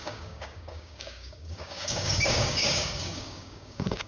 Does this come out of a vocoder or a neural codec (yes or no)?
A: yes